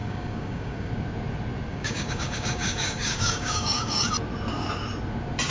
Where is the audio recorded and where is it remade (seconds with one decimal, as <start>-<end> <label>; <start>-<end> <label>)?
0.0-0.9 remade; 0.9-1.7 recorded; 1.7-4.1 remade; 4.1-5.5 recorded